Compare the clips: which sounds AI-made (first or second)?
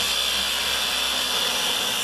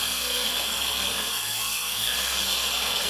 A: second